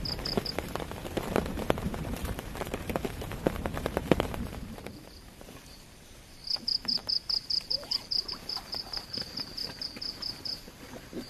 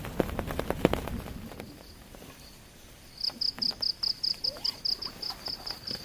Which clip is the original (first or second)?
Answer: second